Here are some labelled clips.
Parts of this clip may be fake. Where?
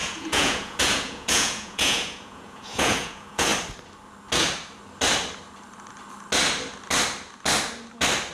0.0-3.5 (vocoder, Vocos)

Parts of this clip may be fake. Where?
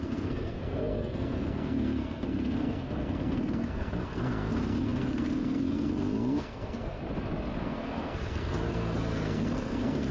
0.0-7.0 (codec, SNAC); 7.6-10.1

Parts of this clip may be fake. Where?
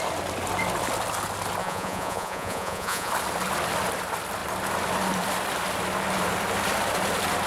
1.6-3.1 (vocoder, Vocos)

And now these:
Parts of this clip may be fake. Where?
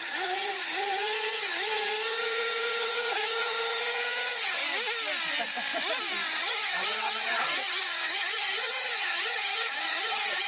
0.0-4.6 (vocoder, HiFi-GAN); 6.3-10.5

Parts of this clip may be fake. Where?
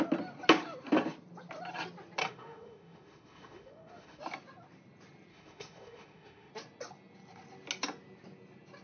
2.2-4.2 (autoencoder, DAC-VAE); 5.3-6.5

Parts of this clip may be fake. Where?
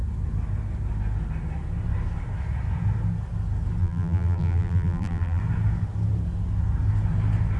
3.8-5.4 (vocoder, BigVGAN v2)